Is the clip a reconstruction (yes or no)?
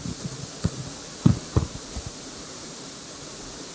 yes